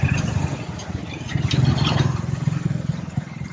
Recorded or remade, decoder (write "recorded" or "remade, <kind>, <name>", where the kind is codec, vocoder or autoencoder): recorded